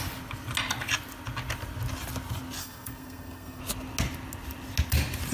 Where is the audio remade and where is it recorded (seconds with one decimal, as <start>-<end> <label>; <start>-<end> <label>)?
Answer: 0.0-2.6 recorded; 2.6-3.6 remade; 3.6-5.3 recorded